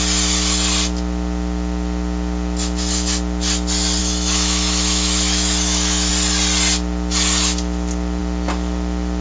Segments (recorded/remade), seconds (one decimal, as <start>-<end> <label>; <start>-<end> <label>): 0.0-4.0 recorded; 4.0-6.1 remade; 6.1-9.2 recorded